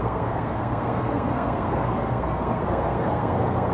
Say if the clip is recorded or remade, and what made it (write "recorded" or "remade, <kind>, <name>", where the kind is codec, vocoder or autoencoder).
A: remade, codec, SNAC